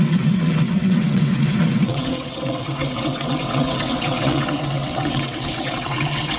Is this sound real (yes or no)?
no